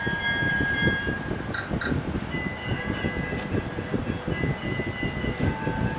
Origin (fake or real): real